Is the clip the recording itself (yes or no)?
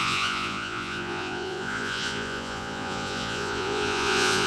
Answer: no